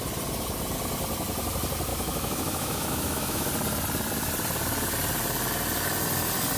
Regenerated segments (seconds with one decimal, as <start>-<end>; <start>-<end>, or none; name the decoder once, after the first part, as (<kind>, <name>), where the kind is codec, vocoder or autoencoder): 1.9-3.5 (autoencoder, DAC-VAE)